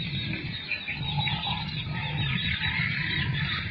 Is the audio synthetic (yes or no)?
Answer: yes